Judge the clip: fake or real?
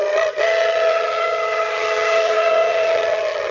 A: fake